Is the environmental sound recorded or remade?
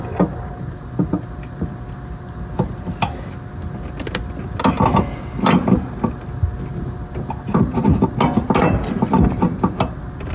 recorded